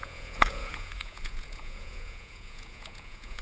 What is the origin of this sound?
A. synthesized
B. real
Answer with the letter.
A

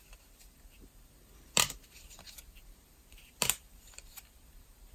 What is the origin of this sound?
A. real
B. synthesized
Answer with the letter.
B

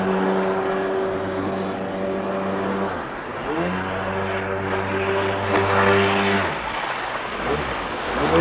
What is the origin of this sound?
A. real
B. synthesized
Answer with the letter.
A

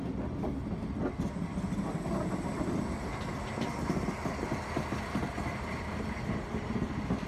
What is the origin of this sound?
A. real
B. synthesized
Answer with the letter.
A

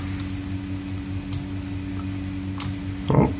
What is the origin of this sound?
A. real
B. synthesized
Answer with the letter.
A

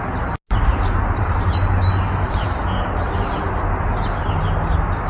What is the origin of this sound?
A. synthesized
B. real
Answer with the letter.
B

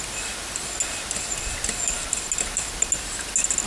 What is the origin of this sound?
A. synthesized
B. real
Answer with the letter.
B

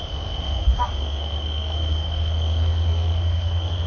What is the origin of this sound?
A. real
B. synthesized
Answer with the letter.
B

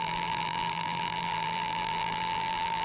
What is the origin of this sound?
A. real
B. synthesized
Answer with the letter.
B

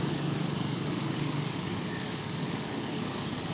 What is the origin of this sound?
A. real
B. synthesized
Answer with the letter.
B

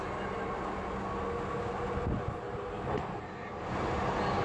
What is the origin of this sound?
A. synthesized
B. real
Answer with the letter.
B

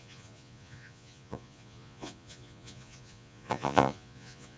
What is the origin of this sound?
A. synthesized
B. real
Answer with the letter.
A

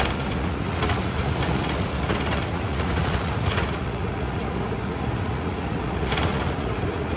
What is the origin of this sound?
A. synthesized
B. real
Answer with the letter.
A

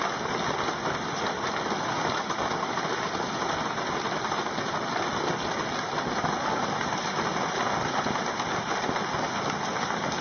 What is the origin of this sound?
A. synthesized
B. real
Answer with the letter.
B